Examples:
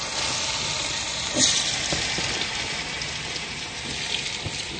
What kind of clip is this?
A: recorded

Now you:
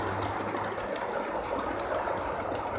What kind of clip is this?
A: recorded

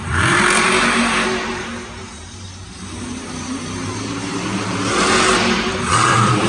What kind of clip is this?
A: remade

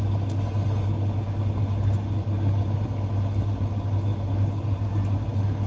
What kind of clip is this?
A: recorded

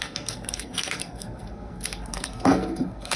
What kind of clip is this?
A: remade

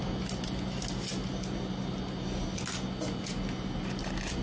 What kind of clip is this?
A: recorded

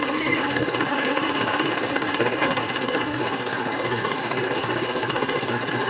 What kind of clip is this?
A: remade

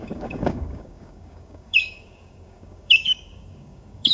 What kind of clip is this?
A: remade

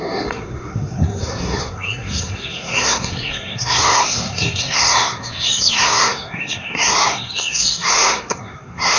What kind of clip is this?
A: remade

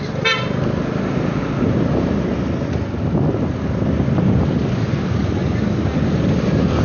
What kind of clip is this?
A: recorded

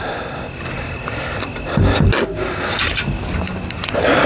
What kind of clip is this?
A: recorded